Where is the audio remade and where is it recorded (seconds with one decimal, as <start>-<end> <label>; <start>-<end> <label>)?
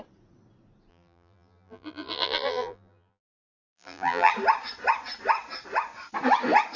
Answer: 0.0-0.9 recorded; 0.9-4.3 remade; 4.3-6.8 recorded